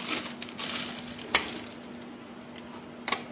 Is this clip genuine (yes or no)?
yes